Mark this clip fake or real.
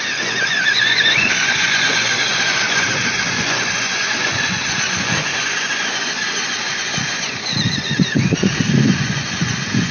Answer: fake